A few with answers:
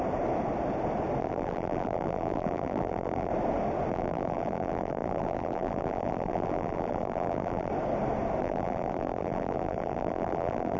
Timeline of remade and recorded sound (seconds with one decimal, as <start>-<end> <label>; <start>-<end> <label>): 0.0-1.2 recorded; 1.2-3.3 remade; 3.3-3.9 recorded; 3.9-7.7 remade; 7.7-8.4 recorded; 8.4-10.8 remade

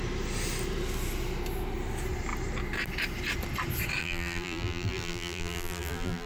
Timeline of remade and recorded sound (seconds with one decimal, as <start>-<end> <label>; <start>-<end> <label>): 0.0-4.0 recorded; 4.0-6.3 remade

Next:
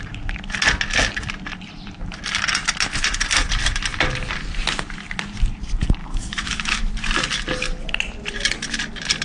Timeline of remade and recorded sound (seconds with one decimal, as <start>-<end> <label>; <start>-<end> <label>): 0.0-6.0 recorded; 6.0-6.9 remade; 6.9-9.2 recorded

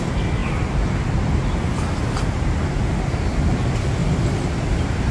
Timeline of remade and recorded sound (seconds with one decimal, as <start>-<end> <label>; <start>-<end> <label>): 0.0-4.0 recorded; 4.0-5.1 remade